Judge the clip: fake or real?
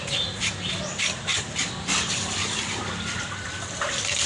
real